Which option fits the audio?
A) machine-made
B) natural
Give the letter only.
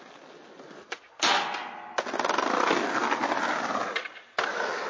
B